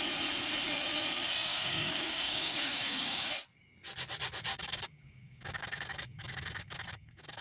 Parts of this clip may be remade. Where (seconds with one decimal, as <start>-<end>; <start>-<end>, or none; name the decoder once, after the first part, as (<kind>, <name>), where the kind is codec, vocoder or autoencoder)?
1.5-3.3 (codec, DAC); 4.5-7.4